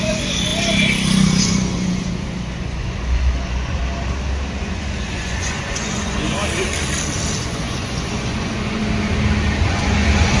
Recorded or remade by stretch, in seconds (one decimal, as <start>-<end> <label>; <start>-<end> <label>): 0.0-0.5 remade; 0.5-1.4 recorded; 1.4-3.8 remade; 3.8-4.6 recorded; 4.6-6.4 remade; 6.4-7.4 recorded; 7.4-8.8 remade; 8.8-9.6 recorded; 9.6-10.4 remade